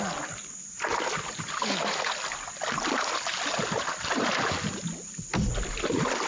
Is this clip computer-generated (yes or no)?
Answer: no